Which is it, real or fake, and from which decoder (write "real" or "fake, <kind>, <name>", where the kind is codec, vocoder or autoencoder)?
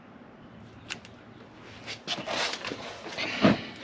real